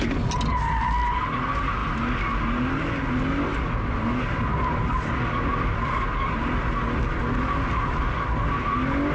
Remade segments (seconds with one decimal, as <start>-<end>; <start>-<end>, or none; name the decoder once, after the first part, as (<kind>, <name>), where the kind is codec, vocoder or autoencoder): none